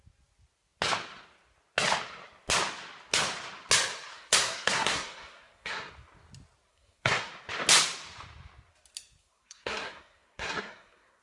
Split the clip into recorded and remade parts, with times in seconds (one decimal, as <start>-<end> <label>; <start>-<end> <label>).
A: 0.0-4.1 recorded; 4.1-5.9 remade; 5.9-6.7 recorded; 6.7-7.3 remade; 7.3-9.2 recorded; 9.2-11.2 remade